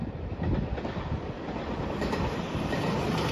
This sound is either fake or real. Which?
real